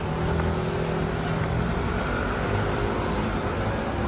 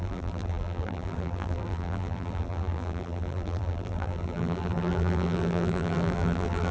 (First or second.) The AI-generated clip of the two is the second